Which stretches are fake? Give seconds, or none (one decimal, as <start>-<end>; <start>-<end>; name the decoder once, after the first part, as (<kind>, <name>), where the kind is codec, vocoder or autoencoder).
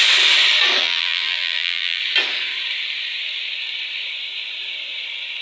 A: 0.8-2.0 (vocoder, BigVGAN v2)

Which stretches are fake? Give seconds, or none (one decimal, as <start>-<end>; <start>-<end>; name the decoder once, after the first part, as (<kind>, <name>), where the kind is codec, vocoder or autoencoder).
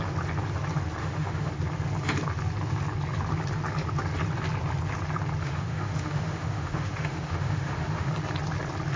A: 1.0-1.5 (autoencoder, DAC-VAE); 5.4-8.1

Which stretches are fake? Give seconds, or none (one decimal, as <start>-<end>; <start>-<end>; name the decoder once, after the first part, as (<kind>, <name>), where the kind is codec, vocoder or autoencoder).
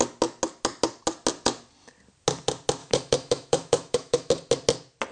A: 2.8-4.3 (autoencoder, DAC-VAE)